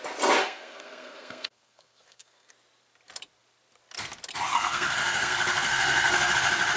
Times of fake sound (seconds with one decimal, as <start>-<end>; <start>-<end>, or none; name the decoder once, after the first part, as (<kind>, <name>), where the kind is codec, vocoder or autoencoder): 0.4-2.5 (codec, SNAC); 4.5-6.3